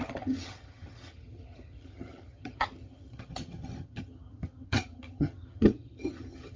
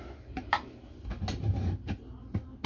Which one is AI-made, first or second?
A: first